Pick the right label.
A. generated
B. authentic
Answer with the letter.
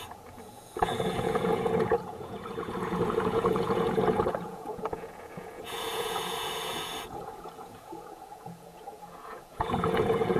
A